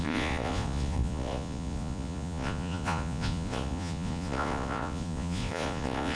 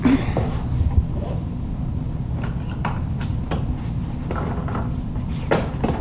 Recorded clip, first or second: second